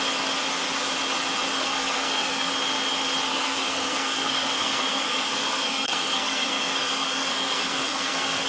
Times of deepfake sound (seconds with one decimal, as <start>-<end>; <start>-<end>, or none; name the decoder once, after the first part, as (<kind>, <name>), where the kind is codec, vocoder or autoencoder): 1.6-2.5 (codec, SNAC); 3.3-8.5